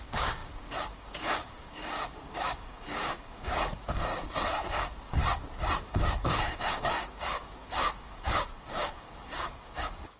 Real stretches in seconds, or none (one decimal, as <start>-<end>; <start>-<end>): 4.1-4.7; 5.2-5.8